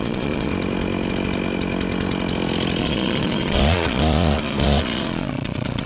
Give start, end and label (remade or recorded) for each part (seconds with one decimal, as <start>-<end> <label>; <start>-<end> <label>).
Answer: 0.0-0.5 remade; 0.5-2.8 recorded; 2.8-5.9 remade